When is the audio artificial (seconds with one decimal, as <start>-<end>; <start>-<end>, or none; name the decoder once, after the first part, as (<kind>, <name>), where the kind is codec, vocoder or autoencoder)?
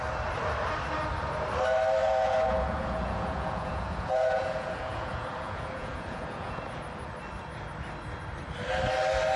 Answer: 2.0-6.8 (vocoder, Vocos)